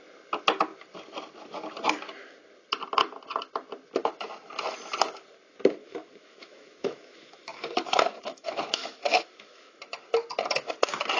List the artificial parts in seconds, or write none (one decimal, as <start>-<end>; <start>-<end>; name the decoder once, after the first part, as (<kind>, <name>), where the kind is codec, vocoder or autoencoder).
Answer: 5.8-9.8 (autoencoder, DAC-VAE)